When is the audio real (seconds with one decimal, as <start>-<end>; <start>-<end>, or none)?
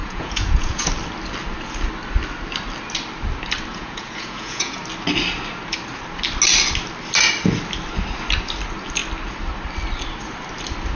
0.9-3.7; 4.8-11.0